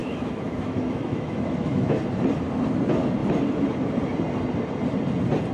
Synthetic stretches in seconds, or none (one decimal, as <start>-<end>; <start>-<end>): 0.0-2.0